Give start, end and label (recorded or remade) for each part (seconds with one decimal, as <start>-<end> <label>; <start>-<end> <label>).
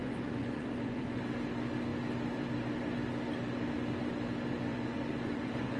0.0-1.2 remade; 1.2-4.7 recorded; 4.7-5.8 remade